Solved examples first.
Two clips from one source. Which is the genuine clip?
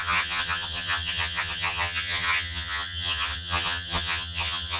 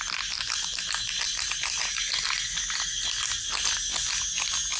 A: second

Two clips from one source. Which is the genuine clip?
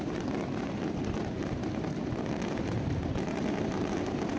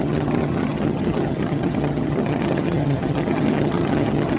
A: first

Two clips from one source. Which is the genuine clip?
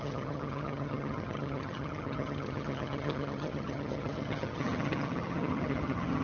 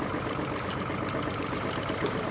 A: second